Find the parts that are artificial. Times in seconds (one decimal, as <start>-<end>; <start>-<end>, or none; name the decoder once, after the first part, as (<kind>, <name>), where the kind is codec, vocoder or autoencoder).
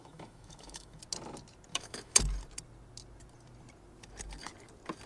0.0-1.0 (autoencoder, DAC-VAE); 1.7-2.2